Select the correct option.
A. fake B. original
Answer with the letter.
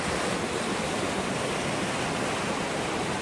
B